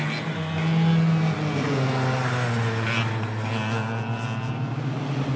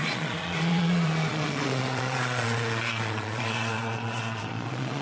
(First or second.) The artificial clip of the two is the second